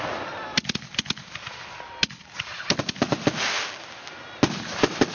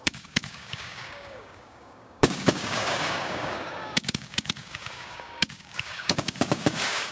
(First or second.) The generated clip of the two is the second